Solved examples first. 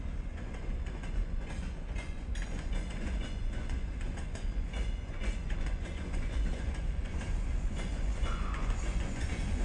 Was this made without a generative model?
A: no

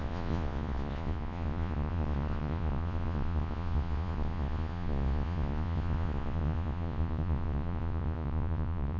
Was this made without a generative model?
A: no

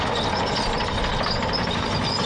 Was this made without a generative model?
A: yes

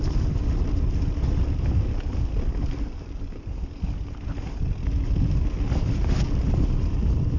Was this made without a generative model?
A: yes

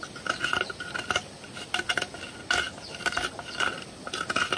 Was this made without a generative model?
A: yes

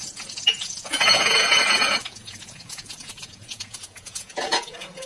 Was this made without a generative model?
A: no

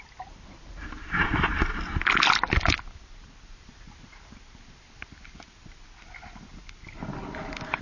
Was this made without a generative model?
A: yes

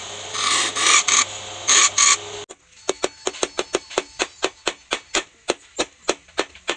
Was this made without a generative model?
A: yes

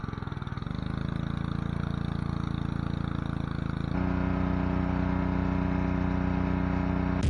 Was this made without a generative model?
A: yes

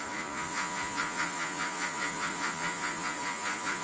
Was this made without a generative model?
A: no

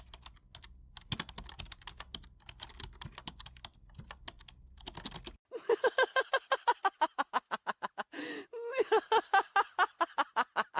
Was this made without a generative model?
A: yes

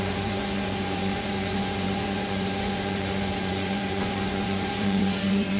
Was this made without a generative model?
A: no